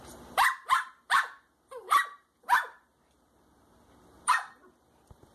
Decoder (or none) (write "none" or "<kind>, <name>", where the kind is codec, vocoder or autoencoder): vocoder, BigVGAN v2